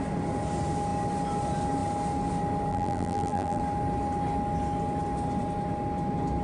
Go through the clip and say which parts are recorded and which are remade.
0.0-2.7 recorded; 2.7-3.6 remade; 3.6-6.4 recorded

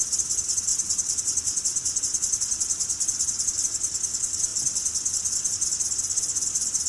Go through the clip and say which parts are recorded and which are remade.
0.0-6.9 recorded

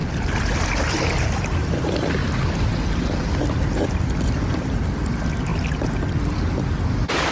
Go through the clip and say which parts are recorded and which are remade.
0.0-2.2 remade; 2.2-3.4 recorded; 3.4-5.5 remade; 5.5-6.1 recorded; 6.1-7.3 remade